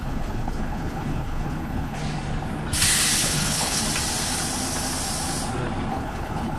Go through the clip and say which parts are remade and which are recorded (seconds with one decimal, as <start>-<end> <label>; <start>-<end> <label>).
0.0-2.0 remade; 2.0-3.2 recorded; 3.2-3.8 remade; 3.8-5.9 recorded; 5.9-6.6 remade